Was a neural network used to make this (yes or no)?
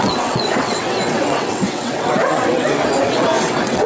yes